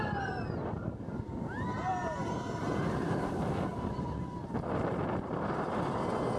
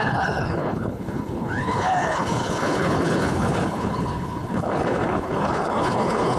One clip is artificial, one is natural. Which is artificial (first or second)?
second